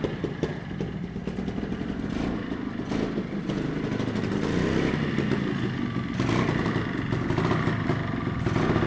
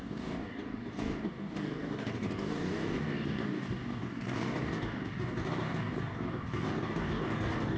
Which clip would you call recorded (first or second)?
first